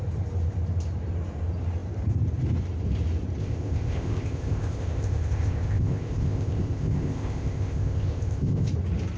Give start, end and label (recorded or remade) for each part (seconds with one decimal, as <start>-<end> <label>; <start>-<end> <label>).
0.0-3.4 recorded; 3.4-8.7 remade; 8.7-9.2 recorded